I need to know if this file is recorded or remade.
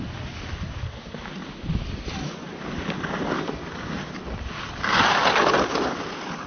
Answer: recorded